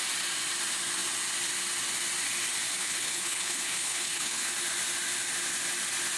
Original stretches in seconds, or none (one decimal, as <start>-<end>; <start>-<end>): 0.0-2.8; 4.5-6.2